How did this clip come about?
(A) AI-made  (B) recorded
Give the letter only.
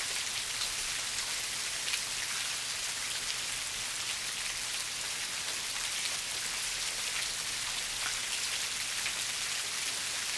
B